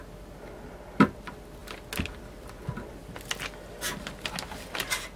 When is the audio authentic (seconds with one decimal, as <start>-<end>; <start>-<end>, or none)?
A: 0.0-5.2